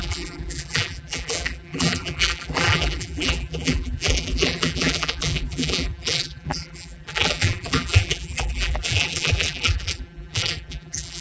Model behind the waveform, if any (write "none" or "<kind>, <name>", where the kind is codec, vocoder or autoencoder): vocoder, BigVGAN v2